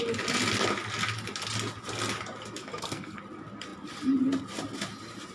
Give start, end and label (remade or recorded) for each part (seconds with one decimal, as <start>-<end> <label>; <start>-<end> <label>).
0.0-2.6 recorded; 2.6-3.2 remade; 3.2-5.3 recorded